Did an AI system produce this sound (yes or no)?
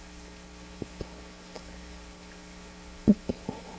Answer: yes